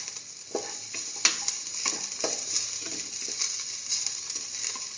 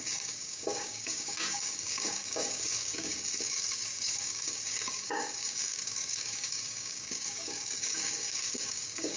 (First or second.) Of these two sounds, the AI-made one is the second